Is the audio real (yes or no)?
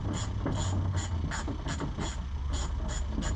yes